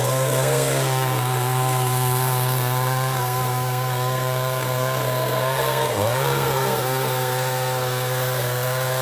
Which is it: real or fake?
fake